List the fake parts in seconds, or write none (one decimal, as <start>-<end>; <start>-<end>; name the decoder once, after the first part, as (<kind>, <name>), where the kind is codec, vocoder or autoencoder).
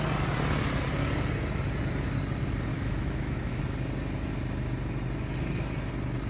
2.7-3.6 (autoencoder, DAC-VAE)